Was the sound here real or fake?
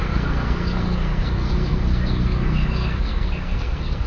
fake